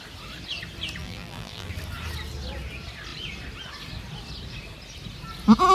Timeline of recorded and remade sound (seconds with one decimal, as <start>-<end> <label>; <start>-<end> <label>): 0.0-1.0 recorded; 1.0-1.7 remade; 1.7-5.7 recorded